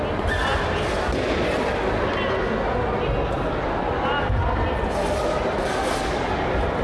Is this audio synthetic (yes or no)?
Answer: no